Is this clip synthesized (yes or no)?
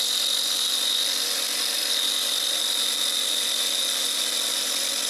no